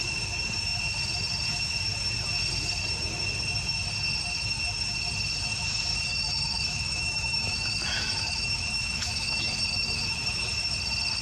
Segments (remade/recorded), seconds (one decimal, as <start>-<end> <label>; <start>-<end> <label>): 0.0-5.9 recorded; 5.9-10.5 remade; 10.5-11.2 recorded